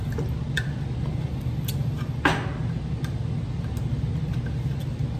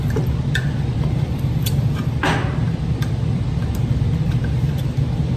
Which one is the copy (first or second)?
second